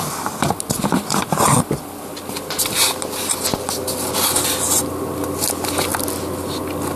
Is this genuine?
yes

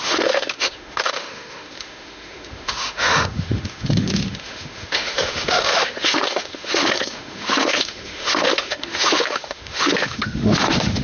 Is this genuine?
no